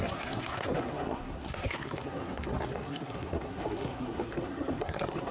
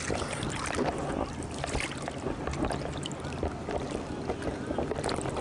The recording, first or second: second